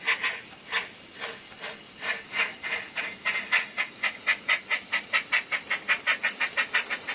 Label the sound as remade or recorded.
recorded